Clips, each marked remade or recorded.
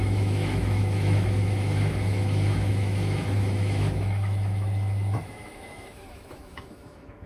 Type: remade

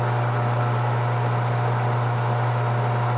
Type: recorded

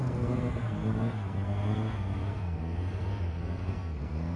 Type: remade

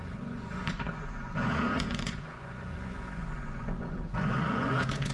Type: remade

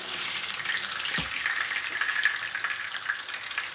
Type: recorded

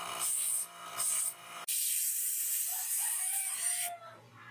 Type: recorded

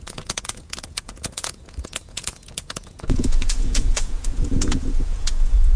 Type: remade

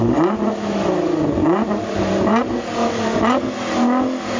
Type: recorded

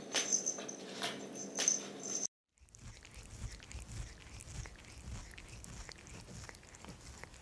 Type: recorded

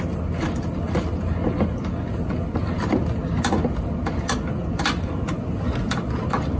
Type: recorded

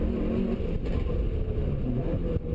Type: recorded